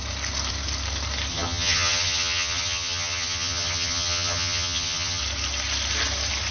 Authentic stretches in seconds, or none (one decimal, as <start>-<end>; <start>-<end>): 0.0-1.3; 5.2-6.5